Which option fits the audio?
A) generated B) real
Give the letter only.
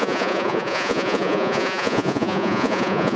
A